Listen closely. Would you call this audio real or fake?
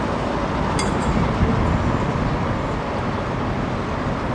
real